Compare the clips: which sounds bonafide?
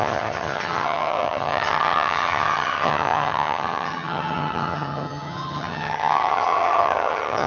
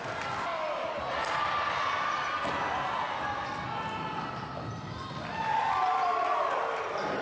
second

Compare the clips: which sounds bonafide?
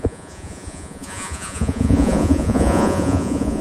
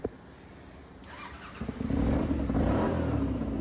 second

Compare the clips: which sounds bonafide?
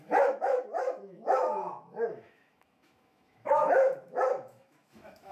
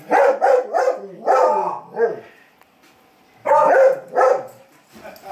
second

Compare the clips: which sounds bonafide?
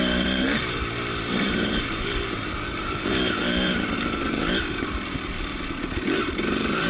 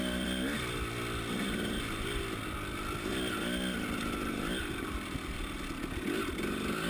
second